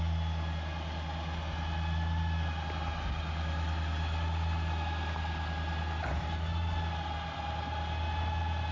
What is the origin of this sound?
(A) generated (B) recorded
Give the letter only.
B